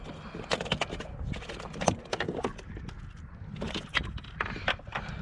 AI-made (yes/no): no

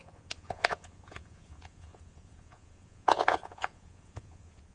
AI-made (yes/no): yes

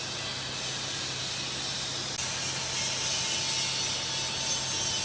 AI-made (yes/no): no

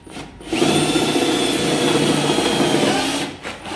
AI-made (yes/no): no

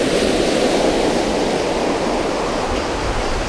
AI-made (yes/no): no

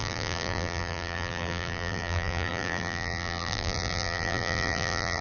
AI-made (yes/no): yes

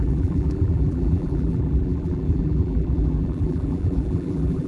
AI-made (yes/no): yes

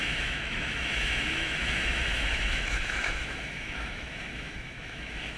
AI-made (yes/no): yes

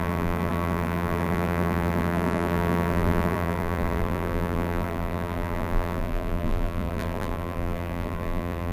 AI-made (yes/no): yes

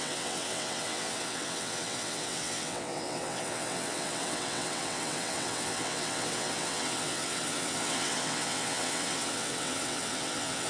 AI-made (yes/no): yes